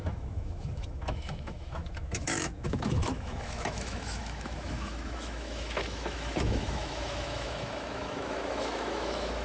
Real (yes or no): no